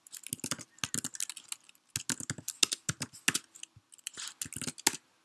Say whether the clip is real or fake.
real